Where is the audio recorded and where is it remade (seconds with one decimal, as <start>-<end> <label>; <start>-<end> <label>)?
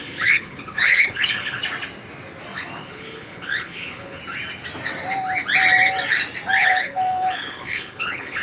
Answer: 0.0-1.6 remade; 1.6-2.8 recorded; 2.8-4.2 remade; 4.2-6.6 recorded; 6.6-8.4 remade